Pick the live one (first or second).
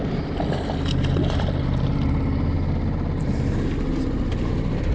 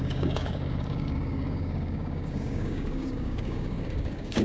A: first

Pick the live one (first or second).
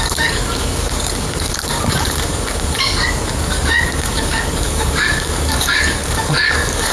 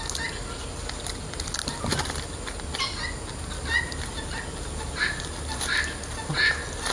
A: second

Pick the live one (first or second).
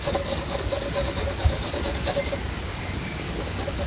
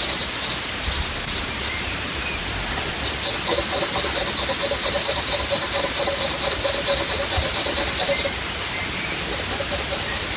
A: second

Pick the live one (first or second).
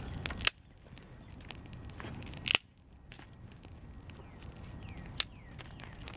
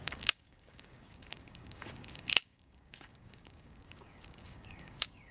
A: first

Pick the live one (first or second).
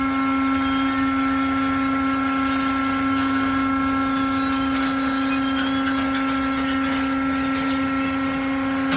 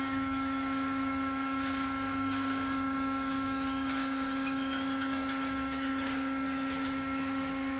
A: first